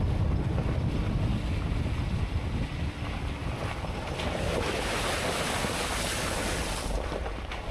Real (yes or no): yes